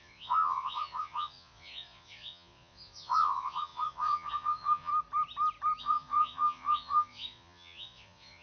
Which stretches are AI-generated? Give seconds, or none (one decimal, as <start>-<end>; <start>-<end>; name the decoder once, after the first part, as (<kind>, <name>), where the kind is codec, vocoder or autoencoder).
0.0-4.9 (vocoder, Vocos); 5.8-8.4